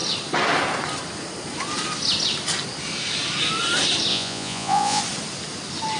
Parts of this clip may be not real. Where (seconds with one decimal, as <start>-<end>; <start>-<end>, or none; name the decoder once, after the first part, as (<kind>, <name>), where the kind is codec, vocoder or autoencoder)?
4.1-5.0 (vocoder, Vocos)